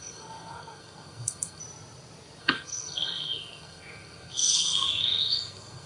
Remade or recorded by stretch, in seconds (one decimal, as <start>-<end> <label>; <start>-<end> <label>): 0.0-1.6 remade; 1.6-2.4 recorded; 2.4-5.9 remade